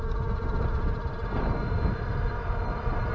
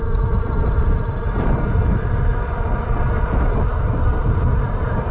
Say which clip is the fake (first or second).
second